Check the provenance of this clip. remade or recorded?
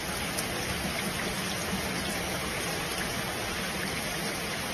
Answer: recorded